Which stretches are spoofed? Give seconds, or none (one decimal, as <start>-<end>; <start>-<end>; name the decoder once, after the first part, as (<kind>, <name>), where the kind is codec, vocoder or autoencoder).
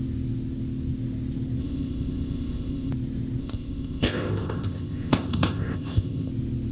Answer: 1.6-2.9 (codec, ZipCodec); 3.4-6.3